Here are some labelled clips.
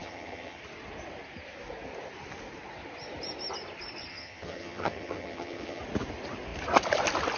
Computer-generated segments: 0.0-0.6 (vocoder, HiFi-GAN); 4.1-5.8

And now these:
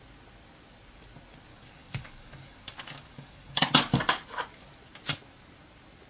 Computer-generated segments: 1.5-4.0 (codec, DAC)

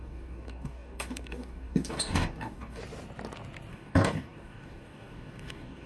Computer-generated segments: 0.0-2.8 (codec, DAC); 3.7-5.9

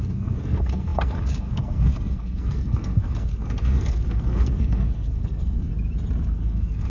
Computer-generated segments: 0.0-5.7 (codec, SNAC); 6.3-6.9

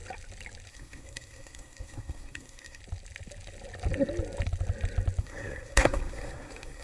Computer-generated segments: 0.7-2.8 (codec, SNAC); 5.2-6.8